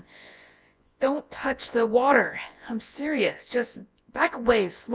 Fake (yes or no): yes